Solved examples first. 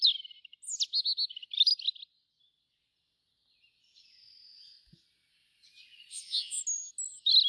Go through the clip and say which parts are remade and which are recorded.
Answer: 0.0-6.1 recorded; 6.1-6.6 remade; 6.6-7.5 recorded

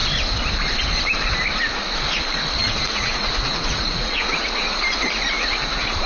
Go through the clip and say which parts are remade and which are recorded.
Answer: 0.0-2.6 recorded; 2.6-4.8 remade; 4.8-6.1 recorded

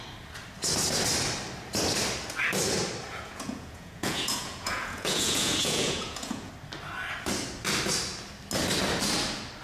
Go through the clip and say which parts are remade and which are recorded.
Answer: 0.0-3.1 recorded; 3.1-6.5 remade; 6.5-9.6 recorded